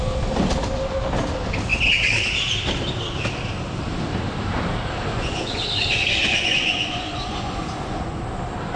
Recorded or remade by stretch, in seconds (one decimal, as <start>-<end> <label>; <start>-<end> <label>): 0.0-5.1 recorded; 5.1-5.6 remade; 5.6-6.2 recorded; 6.2-8.2 remade; 8.2-8.8 recorded